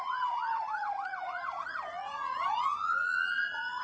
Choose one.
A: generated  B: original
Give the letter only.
A